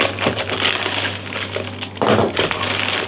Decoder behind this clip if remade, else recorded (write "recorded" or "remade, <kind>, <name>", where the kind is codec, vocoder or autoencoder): recorded